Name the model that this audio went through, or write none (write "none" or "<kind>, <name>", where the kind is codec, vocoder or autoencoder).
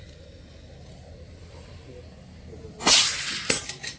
none